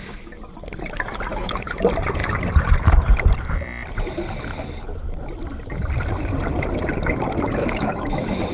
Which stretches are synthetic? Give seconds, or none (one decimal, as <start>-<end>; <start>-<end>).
1.3-1.8; 7.6-8.5